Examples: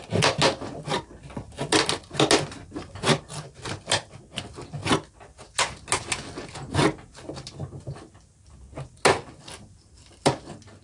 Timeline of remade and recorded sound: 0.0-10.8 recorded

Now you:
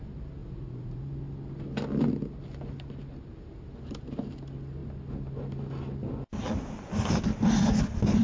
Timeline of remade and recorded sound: 0.0-0.4 recorded; 0.4-1.0 remade; 1.0-8.2 recorded

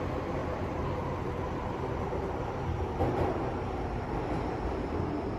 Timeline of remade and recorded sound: 0.0-0.4 recorded; 0.4-2.8 remade; 2.8-5.4 recorded

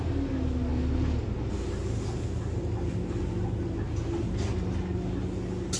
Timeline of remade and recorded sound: 0.0-5.8 recorded

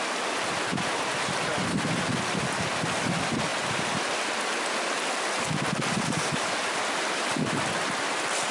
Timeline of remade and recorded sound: 0.0-0.7 recorded; 0.7-1.5 remade; 1.5-8.5 recorded

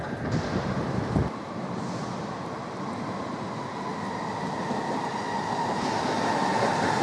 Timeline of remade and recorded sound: 0.0-7.0 recorded